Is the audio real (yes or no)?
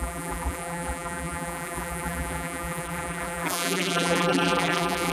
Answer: no